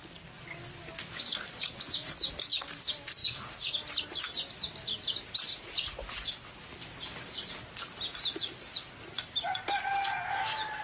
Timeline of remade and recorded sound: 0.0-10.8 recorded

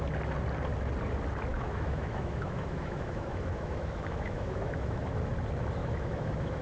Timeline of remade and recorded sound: 0.0-1.5 recorded; 1.5-5.3 remade; 5.3-5.8 recorded; 5.8-6.6 remade

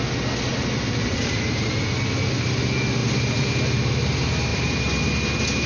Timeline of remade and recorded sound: 0.0-0.5 recorded; 0.5-1.8 remade; 1.8-3.0 recorded; 3.0-3.5 remade; 3.5-4.5 recorded; 4.5-5.0 remade; 5.0-5.7 recorded

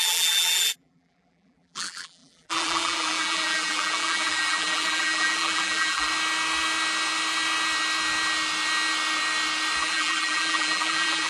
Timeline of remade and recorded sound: 0.0-6.1 remade; 6.1-9.8 recorded; 9.8-11.3 remade

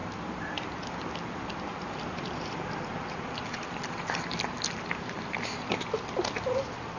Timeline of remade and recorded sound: 0.0-7.0 recorded